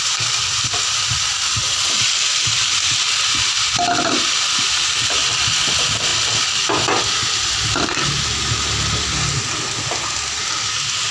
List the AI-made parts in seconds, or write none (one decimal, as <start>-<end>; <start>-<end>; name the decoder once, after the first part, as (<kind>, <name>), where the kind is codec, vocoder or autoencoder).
none